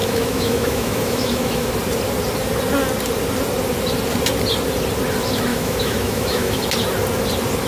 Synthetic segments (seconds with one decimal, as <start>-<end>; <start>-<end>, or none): 0.0-1.7; 5.5-6.6